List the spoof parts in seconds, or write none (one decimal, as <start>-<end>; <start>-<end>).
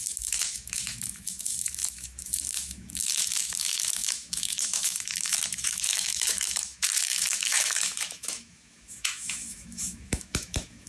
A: 0.0-10.9